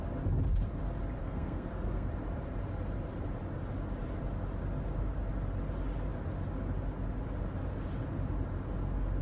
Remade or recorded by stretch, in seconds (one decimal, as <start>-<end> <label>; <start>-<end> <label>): 0.0-1.2 recorded; 1.2-2.1 remade; 2.1-9.2 recorded